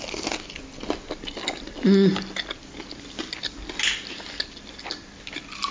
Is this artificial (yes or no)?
no